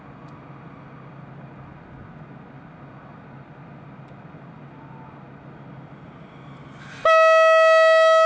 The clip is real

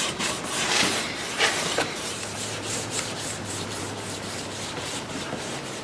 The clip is fake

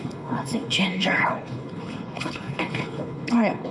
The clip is fake